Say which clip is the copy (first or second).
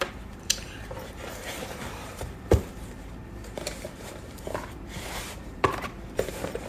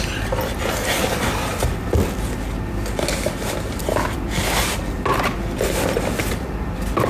first